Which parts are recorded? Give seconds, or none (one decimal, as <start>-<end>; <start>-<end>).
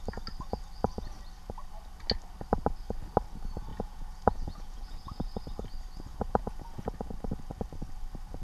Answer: 0.0-3.7; 5.4-6.1; 6.9-8.4